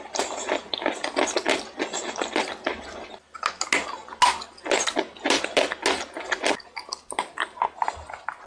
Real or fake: real